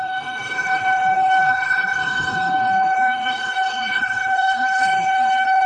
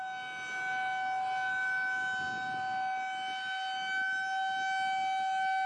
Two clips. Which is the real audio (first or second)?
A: second